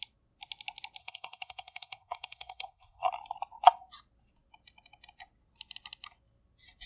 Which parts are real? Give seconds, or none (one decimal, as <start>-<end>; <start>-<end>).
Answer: 0.0-1.0; 3.1-6.9